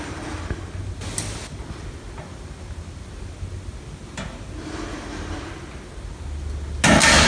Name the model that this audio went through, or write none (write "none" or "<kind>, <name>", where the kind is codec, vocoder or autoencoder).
none